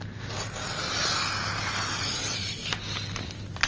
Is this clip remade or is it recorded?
recorded